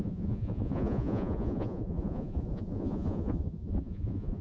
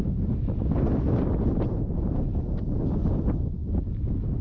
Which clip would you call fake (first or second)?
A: first